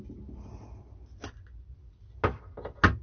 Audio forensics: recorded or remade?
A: recorded